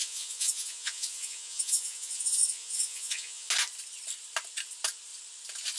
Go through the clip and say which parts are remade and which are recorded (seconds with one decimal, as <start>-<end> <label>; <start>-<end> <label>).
0.0-3.5 remade; 3.5-5.8 recorded